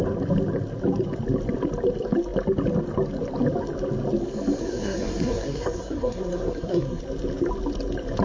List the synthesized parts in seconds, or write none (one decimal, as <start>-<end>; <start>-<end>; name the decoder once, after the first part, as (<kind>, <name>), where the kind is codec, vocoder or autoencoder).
4.6-7.0 (codec, SNAC)